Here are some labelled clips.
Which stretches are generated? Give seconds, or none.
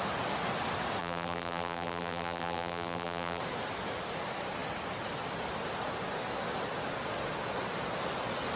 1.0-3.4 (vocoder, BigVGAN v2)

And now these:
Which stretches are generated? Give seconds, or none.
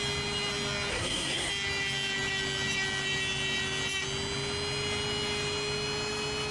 0.9-1.5 (codec, SNAC)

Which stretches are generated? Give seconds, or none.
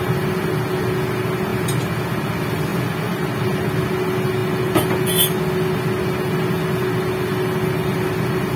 none